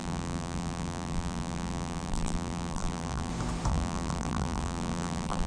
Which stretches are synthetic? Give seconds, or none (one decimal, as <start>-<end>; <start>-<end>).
0.0-3.3; 3.7-5.5